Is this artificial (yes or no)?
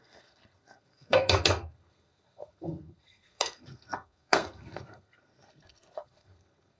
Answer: yes